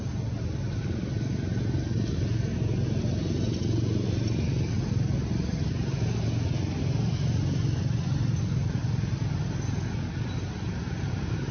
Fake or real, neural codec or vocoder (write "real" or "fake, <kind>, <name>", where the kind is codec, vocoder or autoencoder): real